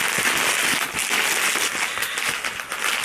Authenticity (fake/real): real